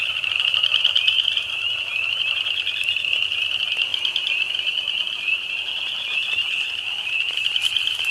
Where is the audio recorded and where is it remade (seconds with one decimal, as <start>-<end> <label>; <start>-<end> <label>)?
0.0-8.1 recorded